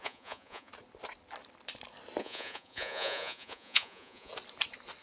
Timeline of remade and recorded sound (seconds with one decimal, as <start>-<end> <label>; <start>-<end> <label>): 0.0-0.7 remade; 0.7-2.2 recorded; 2.2-4.3 remade; 4.3-5.0 recorded